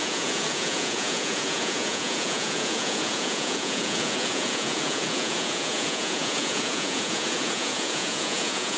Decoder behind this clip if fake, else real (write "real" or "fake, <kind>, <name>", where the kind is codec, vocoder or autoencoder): fake, vocoder, Vocos